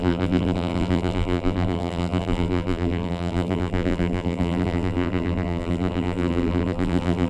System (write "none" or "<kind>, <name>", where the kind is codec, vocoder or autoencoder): vocoder, BigVGAN v2